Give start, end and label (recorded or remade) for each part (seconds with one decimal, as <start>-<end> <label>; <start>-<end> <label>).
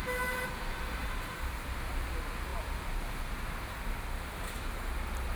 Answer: 0.0-1.0 recorded; 1.0-2.1 remade; 2.1-5.4 recorded